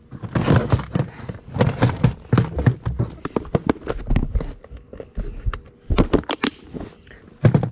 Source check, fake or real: real